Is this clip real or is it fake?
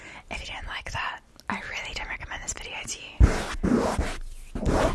real